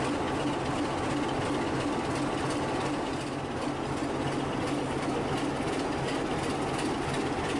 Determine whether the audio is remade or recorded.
recorded